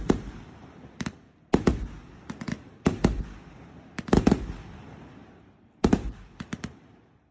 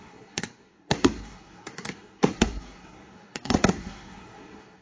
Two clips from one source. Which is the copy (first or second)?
second